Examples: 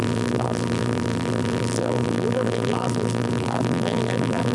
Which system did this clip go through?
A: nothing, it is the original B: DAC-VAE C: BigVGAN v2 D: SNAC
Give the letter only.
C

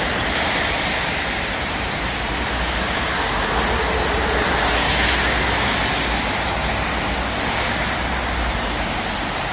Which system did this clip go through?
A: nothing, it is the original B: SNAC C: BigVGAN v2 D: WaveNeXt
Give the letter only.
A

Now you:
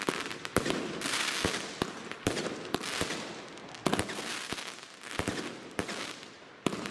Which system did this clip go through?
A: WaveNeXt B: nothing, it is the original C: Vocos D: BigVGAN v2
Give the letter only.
B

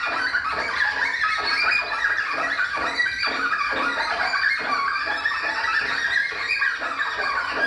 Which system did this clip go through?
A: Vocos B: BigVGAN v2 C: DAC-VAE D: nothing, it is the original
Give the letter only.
D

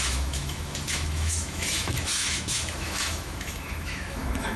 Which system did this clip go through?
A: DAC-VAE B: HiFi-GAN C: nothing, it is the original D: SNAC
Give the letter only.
A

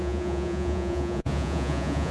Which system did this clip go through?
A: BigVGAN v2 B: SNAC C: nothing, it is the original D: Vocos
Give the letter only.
D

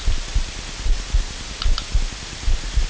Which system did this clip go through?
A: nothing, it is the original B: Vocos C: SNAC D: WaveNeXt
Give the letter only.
A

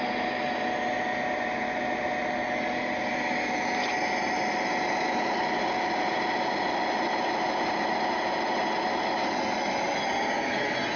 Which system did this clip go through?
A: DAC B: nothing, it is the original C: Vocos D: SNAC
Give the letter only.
B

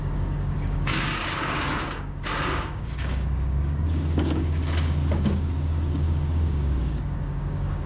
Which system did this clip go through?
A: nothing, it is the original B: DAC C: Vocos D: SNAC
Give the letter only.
B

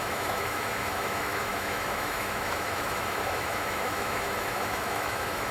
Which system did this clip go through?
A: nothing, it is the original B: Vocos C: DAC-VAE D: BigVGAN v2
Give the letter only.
C